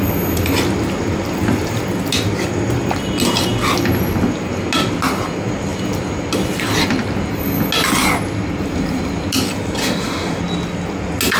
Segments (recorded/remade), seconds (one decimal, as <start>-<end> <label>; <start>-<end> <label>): 0.0-9.8 recorded; 9.8-10.4 remade; 10.4-11.4 recorded